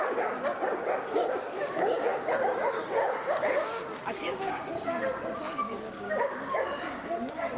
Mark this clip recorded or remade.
remade